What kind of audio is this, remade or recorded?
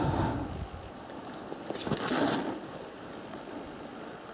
recorded